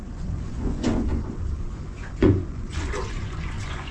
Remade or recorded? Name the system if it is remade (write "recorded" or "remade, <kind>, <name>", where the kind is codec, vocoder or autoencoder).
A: remade, vocoder, Vocos